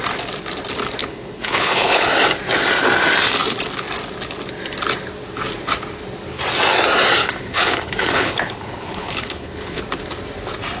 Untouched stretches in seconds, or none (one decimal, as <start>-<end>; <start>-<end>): 0.0-1.0; 2.1-7.2; 9.8-10.8